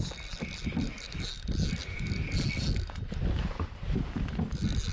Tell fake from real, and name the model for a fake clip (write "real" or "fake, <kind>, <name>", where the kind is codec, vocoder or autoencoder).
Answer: real